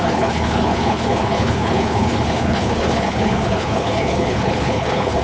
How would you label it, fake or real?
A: fake